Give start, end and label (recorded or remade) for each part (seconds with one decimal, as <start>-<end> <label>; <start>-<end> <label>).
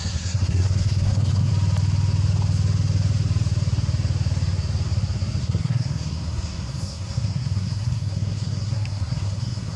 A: 0.0-1.5 remade; 1.5-5.4 recorded; 5.4-9.8 remade